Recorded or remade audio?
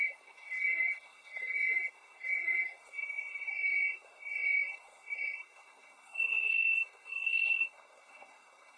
remade